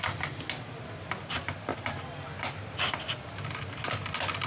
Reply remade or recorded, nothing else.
recorded